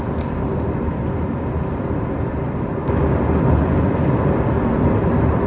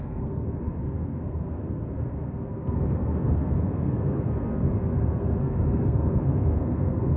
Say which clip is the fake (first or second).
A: second